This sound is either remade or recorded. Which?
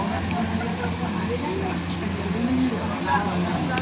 recorded